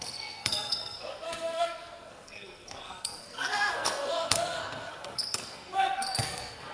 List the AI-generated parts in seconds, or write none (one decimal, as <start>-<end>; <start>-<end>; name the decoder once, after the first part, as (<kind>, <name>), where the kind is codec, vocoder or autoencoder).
0.0-6.7 (codec, SNAC)